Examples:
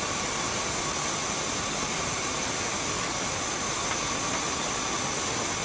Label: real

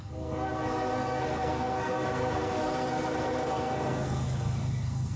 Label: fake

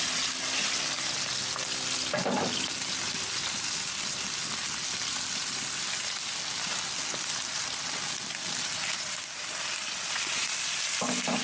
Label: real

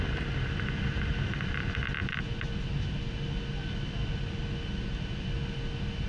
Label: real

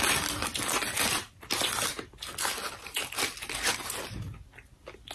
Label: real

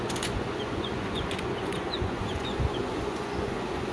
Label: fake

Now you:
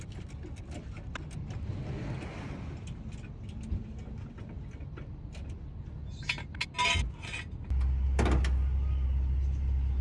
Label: real